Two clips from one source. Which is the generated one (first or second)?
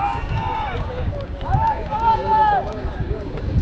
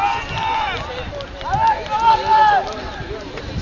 first